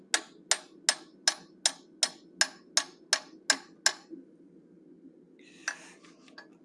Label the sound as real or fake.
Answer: real